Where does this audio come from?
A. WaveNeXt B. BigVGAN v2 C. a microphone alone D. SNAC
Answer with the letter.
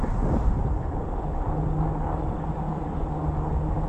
C